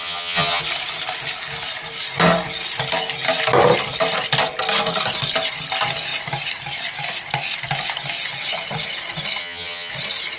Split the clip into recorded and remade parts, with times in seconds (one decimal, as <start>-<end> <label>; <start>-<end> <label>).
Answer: 0.0-0.6 remade; 0.6-9.4 recorded; 9.4-9.9 remade; 9.9-10.4 recorded